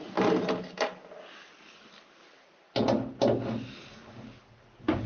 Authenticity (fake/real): real